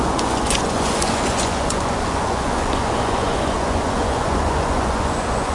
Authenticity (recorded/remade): remade